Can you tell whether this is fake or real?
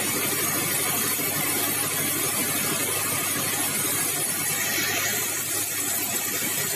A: real